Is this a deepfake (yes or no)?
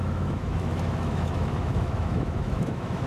yes